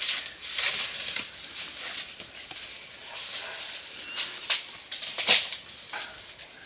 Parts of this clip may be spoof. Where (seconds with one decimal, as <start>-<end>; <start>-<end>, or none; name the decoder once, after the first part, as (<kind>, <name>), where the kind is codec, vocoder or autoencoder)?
none